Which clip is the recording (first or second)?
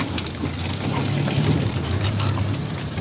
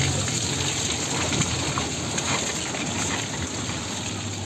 second